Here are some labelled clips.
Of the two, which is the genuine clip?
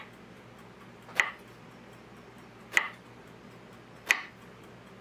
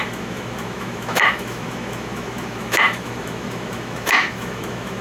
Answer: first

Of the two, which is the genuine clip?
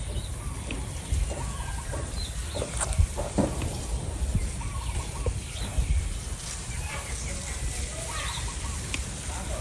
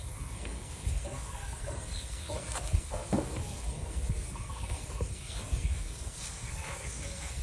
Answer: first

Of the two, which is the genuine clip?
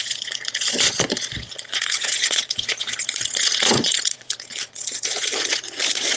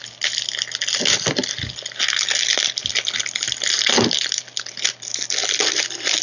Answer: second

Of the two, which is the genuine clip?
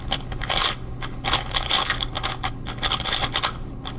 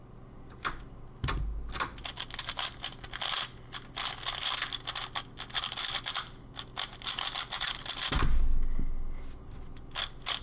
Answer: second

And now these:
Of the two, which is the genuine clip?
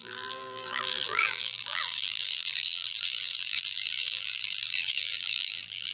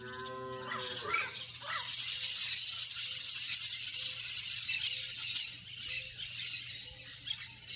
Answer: second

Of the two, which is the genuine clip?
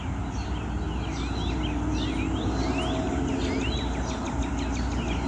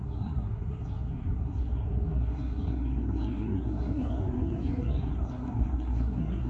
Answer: first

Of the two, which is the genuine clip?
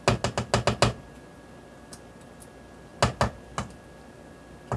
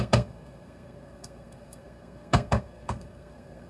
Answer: first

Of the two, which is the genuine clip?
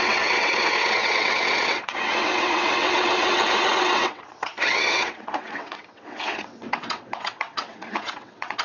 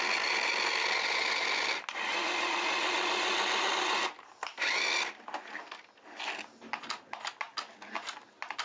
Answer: second